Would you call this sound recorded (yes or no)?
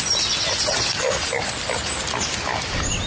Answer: yes